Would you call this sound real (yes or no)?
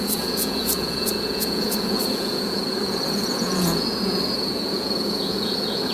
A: no